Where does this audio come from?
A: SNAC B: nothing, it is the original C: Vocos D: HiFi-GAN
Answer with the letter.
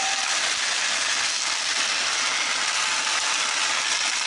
B